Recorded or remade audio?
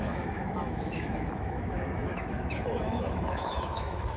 remade